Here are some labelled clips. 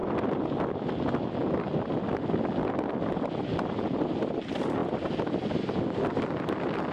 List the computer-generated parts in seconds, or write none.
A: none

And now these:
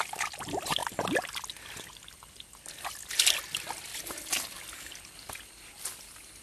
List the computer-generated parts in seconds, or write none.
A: none